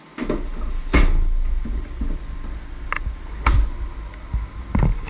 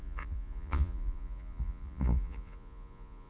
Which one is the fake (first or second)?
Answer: second